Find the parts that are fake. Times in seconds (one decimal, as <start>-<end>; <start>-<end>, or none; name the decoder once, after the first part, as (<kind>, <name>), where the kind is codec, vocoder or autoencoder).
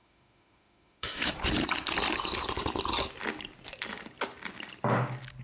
0.0-1.3 (autoencoder, DAC-VAE)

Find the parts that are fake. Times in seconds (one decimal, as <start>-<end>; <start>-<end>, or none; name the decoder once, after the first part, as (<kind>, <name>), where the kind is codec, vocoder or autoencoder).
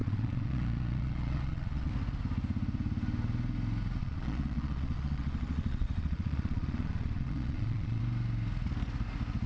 0.0-1.9 (vocoder, Vocos); 4.0-8.0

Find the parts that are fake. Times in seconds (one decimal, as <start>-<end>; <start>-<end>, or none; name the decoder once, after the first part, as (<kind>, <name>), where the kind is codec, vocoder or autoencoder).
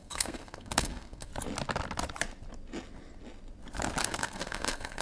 0.0-1.3 (codec, SNAC); 4.0-5.0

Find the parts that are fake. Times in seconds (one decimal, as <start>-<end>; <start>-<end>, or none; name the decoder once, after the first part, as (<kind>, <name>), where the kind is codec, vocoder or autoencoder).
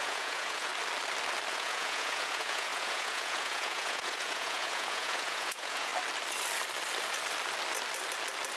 0.0-0.7 (vocoder, Vocos); 1.5-5.9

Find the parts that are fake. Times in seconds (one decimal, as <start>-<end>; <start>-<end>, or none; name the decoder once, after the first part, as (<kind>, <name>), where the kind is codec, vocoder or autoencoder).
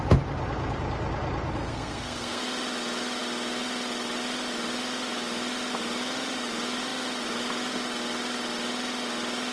1.6-2.4 (codec, SNAC)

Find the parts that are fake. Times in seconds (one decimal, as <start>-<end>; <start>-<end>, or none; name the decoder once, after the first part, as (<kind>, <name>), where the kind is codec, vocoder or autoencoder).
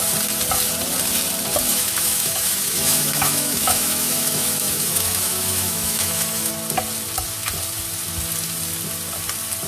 1.7-6.5 (autoencoder, DAC-VAE)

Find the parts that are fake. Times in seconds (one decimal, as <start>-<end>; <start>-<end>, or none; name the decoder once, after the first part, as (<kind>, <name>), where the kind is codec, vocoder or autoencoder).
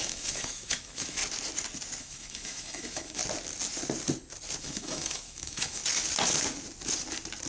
0.0-1.2 (autoencoder, DAC-VAE); 2.0-3.2; 4.6-5.8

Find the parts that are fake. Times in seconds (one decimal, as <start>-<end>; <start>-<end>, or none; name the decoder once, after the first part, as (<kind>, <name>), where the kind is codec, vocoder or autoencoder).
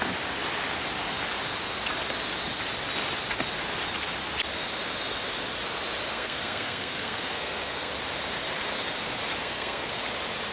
6.1-7.9 (codec, SNAC); 9.4-9.9